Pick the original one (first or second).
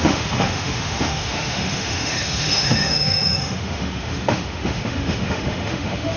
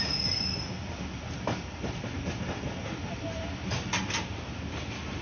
second